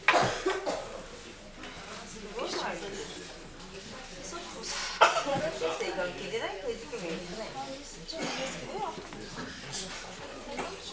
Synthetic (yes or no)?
no